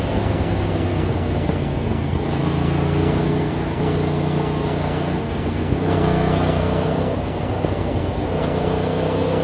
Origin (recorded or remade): remade